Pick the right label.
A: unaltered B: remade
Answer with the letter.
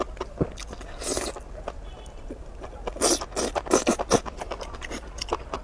A